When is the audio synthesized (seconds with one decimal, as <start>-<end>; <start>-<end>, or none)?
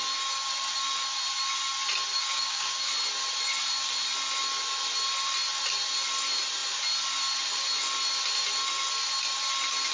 2.1-2.9